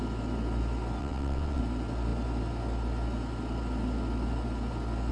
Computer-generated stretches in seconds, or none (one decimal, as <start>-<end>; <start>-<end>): 1.0-1.6